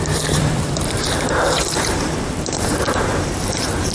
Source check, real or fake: fake